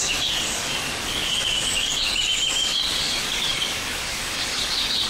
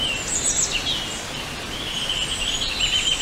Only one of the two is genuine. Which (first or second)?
second